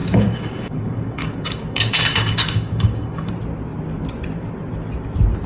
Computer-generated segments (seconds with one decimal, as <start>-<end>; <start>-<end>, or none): 0.0-3.3